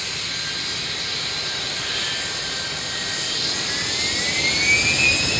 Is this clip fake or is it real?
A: real